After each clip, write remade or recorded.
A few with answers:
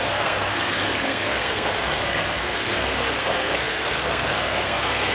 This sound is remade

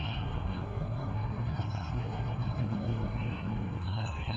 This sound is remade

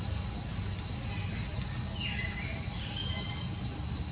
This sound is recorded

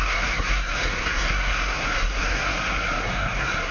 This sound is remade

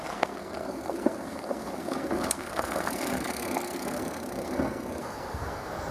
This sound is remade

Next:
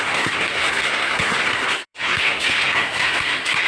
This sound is remade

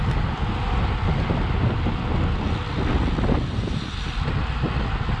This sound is recorded